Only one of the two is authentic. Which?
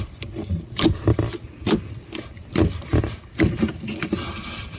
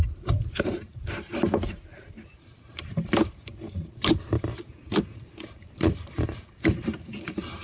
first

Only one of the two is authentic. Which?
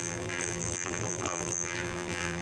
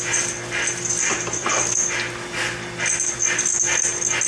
second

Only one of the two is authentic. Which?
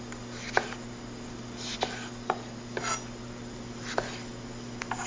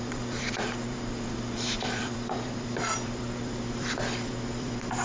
first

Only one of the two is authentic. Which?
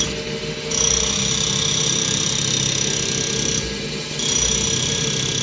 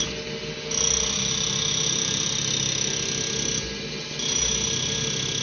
second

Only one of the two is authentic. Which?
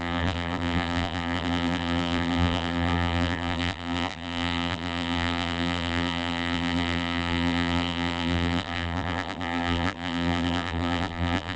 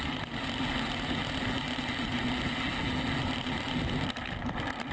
second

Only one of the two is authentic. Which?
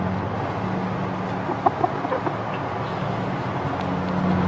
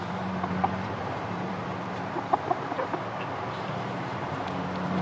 first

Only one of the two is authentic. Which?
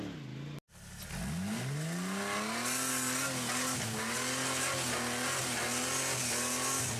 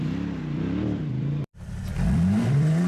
first